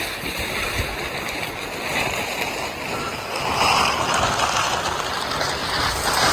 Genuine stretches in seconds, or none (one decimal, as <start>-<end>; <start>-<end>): 0.0-5.6